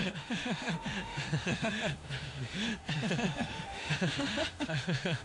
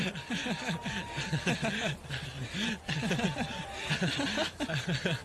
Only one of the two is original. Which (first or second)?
second